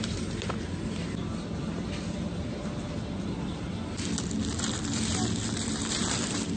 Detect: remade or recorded remade